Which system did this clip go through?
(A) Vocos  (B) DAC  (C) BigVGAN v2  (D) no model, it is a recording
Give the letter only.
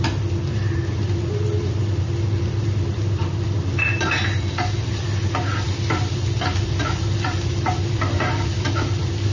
C